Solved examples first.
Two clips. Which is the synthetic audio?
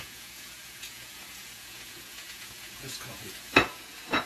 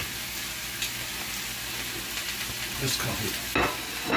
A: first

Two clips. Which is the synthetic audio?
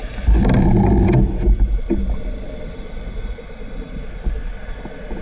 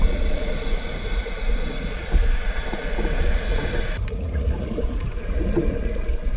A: second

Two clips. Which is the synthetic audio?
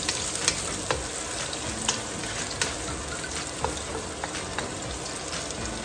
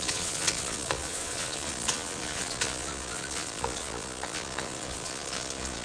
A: second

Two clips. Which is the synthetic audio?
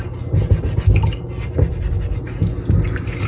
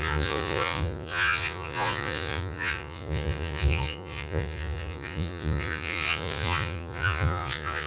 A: second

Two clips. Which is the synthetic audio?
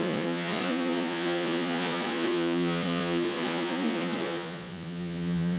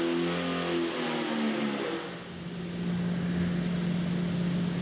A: first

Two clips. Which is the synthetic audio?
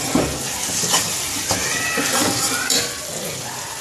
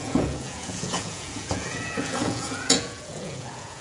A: second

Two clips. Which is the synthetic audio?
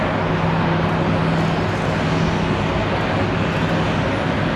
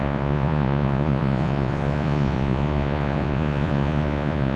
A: second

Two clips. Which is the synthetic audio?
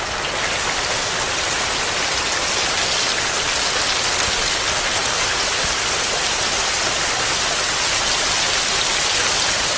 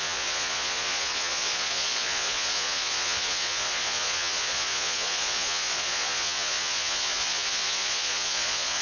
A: second